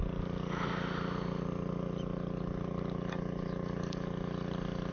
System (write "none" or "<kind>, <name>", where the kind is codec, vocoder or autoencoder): none